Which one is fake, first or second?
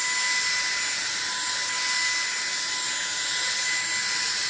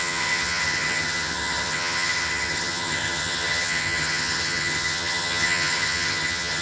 second